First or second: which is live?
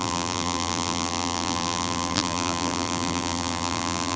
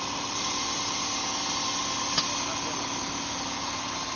second